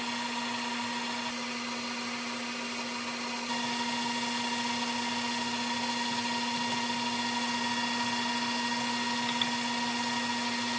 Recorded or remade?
recorded